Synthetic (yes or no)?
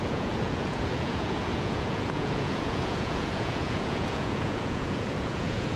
yes